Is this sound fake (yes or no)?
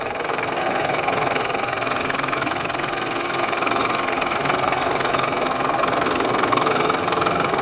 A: yes